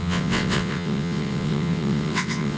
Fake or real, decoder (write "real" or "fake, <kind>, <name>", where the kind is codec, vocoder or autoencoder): fake, vocoder, WaveNeXt